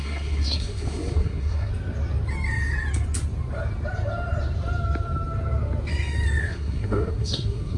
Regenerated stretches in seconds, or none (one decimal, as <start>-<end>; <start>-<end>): 0.0-1.7; 6.4-7.8